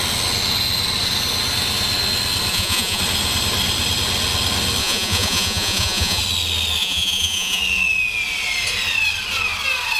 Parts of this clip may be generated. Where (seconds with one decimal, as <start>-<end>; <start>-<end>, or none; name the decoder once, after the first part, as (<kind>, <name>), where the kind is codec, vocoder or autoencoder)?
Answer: 2.5-3.0 (vocoder, Vocos); 4.8-6.2; 6.8-7.6